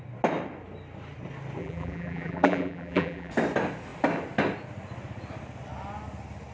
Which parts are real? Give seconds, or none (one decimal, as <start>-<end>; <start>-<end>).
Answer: 0.0-1.6; 3.3-6.5